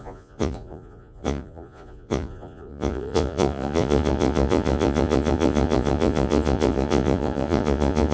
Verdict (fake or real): fake